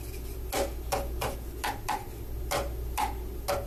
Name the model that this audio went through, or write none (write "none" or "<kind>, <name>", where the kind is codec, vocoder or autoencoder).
none